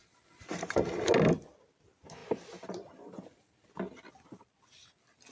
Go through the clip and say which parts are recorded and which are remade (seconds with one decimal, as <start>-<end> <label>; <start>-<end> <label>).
0.0-1.1 remade; 1.1-2.2 recorded; 2.2-4.1 remade; 4.1-5.3 recorded